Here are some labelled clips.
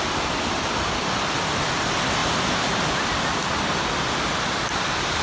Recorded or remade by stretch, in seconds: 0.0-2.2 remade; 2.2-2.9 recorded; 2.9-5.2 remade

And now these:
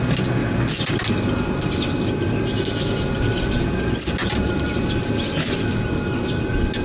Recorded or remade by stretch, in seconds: 0.0-6.8 recorded